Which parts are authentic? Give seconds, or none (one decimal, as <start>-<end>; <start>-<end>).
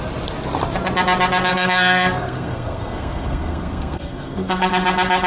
0.0-1.5; 4.7-5.3